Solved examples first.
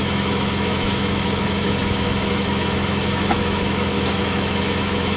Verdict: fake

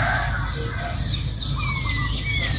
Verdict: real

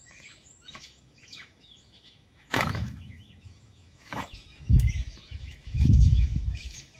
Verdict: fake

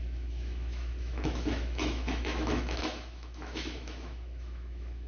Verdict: fake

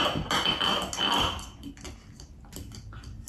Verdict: real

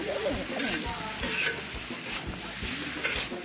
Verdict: real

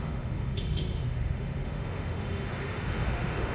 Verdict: fake